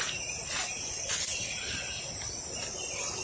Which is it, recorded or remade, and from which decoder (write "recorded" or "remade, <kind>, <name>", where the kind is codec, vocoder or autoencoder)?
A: recorded